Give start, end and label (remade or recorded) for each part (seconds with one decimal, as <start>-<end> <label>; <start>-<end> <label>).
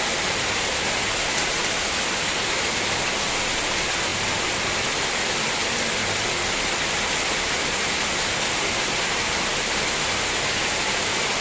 0.0-11.4 recorded